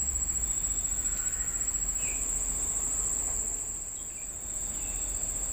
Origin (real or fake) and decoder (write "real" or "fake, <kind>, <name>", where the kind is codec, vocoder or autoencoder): real